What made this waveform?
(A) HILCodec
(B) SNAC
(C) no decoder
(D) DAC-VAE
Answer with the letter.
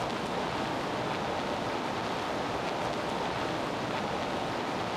C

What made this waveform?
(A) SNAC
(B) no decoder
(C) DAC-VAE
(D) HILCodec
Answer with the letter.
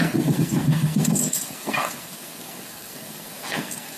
A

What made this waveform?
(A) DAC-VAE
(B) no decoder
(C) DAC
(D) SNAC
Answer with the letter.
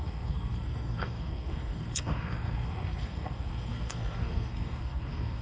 D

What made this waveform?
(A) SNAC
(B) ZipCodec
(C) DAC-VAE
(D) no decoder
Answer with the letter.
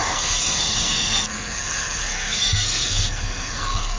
A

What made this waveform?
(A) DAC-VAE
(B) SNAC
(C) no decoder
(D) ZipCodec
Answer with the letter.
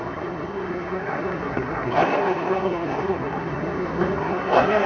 B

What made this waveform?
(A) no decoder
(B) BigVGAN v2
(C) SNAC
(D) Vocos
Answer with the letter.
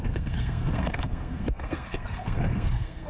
C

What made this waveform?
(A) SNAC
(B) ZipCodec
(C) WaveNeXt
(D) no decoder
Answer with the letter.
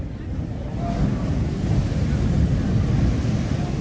D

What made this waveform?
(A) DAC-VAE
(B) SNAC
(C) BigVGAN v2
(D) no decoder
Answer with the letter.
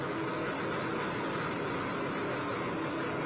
D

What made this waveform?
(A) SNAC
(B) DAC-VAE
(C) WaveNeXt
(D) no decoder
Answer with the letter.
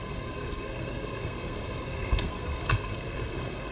A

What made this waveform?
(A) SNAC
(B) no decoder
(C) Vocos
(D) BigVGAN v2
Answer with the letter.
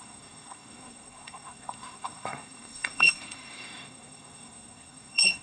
A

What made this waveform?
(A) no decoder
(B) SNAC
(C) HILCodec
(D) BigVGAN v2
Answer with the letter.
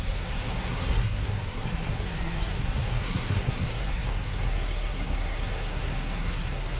B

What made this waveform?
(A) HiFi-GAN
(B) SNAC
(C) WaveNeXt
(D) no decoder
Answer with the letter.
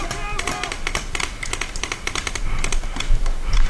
D